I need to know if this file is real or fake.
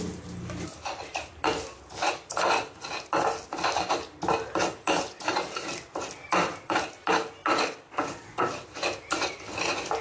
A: real